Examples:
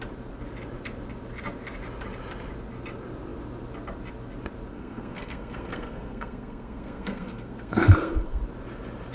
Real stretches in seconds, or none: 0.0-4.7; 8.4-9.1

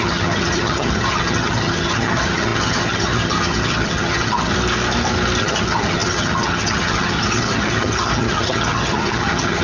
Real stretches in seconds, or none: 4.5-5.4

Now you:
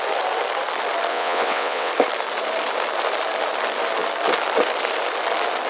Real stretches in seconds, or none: 0.0-1.1; 1.9-5.7